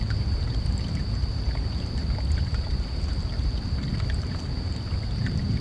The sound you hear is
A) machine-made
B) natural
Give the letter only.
A